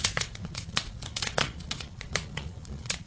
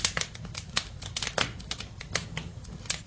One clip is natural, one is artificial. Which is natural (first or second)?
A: second